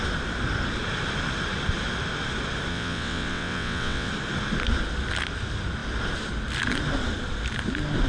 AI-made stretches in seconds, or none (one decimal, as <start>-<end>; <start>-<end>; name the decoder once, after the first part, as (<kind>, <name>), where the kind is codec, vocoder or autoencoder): 2.7-4.1 (vocoder, WaveNeXt)